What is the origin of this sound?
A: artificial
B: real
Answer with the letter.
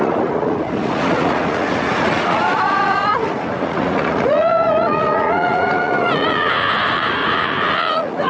A